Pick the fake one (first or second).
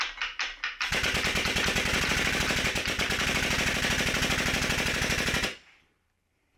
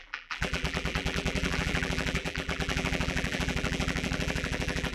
second